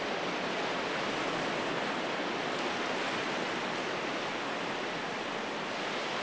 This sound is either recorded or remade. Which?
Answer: recorded